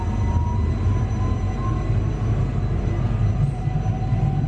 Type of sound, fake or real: real